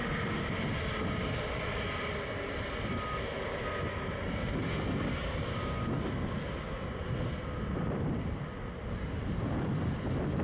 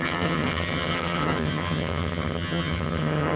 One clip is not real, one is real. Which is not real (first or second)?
second